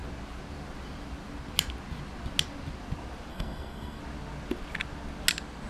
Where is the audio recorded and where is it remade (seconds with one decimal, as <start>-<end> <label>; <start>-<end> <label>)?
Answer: 0.0-3.3 recorded; 3.3-4.0 remade; 4.0-5.7 recorded